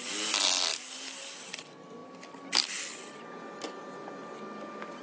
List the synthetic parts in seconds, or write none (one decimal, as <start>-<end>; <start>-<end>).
none